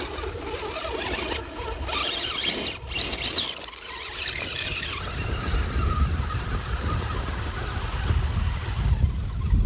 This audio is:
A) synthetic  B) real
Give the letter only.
B